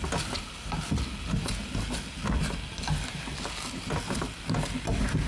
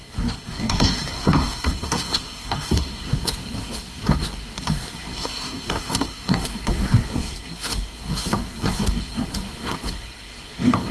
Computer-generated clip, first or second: second